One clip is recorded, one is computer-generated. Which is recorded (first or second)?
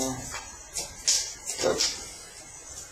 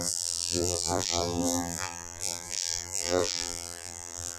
first